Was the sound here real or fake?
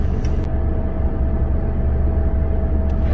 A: real